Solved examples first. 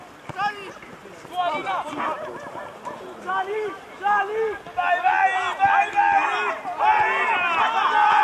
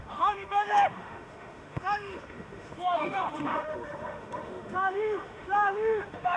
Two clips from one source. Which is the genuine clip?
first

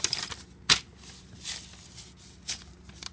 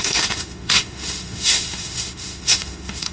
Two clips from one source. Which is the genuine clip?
first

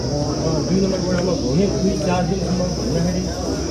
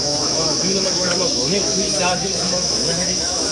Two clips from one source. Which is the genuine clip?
first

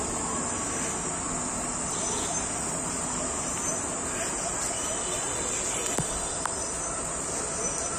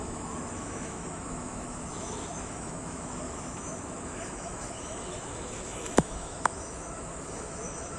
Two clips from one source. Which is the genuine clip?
first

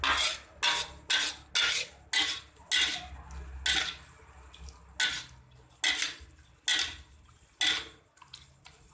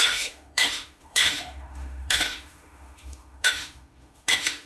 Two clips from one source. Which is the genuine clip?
first